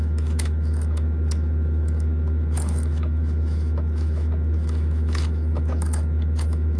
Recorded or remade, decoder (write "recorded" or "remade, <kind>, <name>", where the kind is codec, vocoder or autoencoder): remade, autoencoder, DAC-VAE